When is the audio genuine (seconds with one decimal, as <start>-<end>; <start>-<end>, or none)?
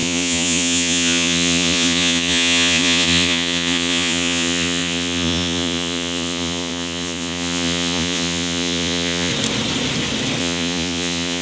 9.3-10.4